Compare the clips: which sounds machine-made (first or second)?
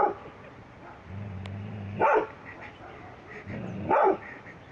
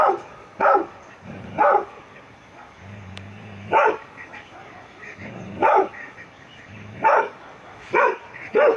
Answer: second